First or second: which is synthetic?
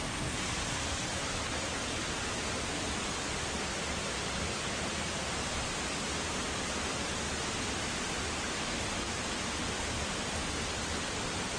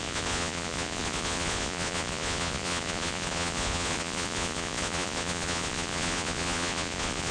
second